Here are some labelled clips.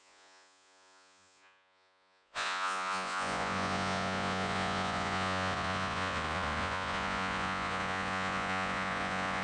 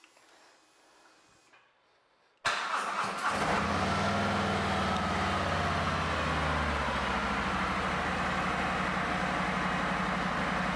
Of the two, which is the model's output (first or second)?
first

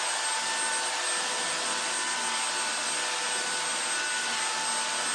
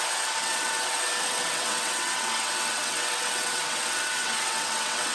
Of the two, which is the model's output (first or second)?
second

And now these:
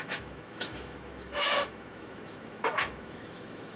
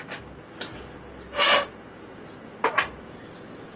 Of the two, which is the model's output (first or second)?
first